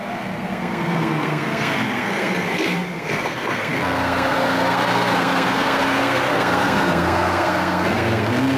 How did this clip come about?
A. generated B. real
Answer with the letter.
A